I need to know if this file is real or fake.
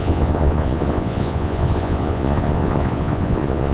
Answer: fake